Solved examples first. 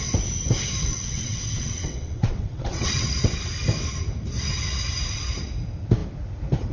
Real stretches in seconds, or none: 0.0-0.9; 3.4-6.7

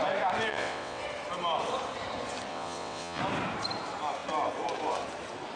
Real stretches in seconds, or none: 0.0-0.5; 1.0-2.5; 3.2-5.6

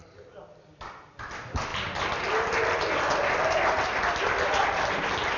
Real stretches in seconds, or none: 0.0-5.4

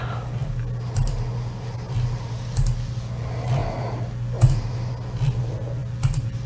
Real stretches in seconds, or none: 0.0-6.5

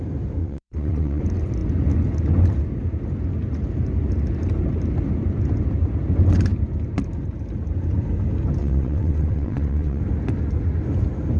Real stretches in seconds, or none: 0.0-0.4; 1.2-8.6; 10.0-11.4